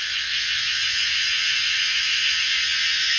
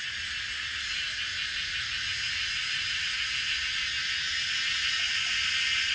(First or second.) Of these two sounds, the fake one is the first